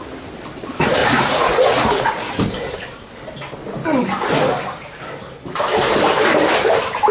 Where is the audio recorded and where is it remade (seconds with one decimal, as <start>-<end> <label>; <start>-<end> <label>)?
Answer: 0.0-1.0 recorded; 1.0-2.4 remade; 2.4-7.1 recorded